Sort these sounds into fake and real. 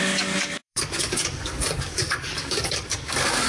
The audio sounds fake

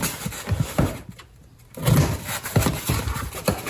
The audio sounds real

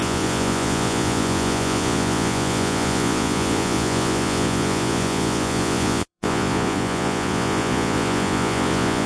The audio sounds fake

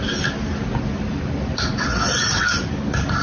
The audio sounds real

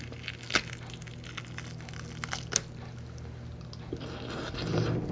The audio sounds real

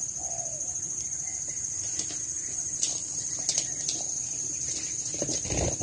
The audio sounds real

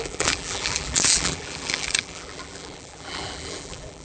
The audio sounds fake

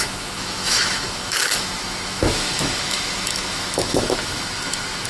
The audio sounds fake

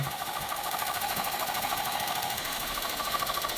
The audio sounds fake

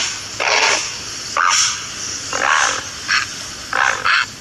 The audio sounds real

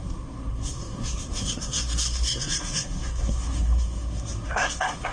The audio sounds fake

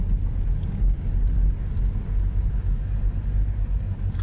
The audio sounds real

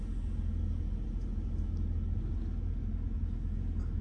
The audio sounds real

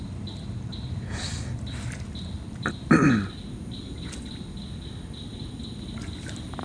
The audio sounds real